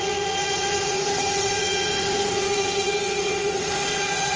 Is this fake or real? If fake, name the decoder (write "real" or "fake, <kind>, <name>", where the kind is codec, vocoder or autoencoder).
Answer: fake, vocoder, Vocos